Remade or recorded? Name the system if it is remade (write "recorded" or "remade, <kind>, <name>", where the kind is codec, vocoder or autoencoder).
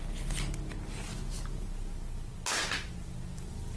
recorded